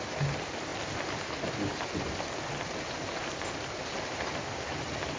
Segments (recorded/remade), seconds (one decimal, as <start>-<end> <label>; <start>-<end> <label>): 0.0-5.2 recorded